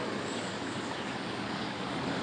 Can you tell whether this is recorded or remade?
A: remade